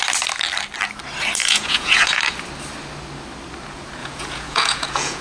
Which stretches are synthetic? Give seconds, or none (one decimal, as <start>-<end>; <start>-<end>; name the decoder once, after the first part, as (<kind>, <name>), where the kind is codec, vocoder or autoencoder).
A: 1.4-2.2 (vocoder, Vocos); 4.0-5.2